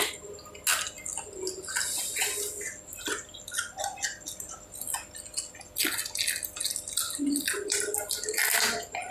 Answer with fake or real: real